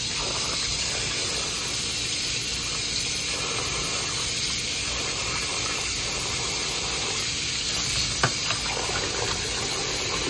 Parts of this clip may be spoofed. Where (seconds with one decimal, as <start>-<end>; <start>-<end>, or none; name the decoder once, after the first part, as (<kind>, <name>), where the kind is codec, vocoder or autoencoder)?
none